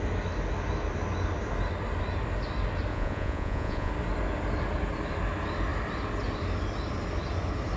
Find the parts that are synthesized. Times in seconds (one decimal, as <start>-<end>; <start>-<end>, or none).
2.9-3.9